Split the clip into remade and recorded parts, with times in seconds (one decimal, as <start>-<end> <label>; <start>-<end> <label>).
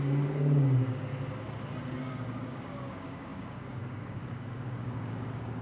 0.0-1.1 remade; 1.1-2.0 recorded; 2.0-5.6 remade